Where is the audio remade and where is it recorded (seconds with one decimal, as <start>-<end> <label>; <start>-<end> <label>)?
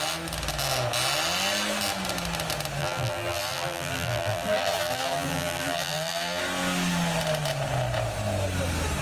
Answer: 0.0-2.8 recorded; 2.8-6.4 remade; 6.4-9.0 recorded